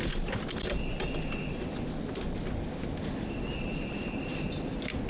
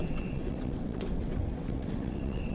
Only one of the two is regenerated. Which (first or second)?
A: second